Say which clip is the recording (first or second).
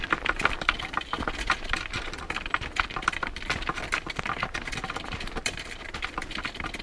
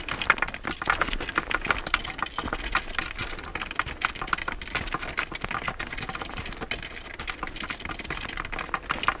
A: second